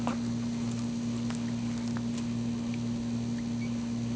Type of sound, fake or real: real